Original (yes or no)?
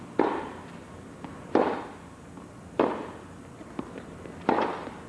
yes